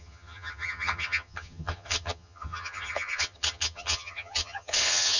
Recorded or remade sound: remade